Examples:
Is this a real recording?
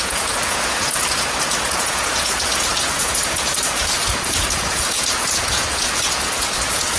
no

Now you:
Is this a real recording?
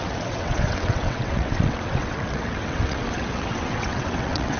no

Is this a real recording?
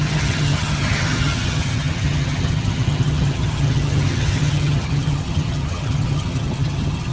no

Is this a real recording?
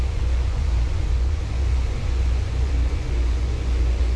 no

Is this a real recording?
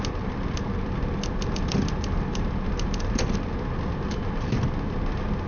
yes